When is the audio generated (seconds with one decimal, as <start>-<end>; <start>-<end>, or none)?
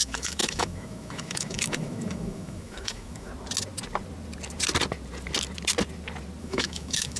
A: 0.0-3.3; 6.4-7.2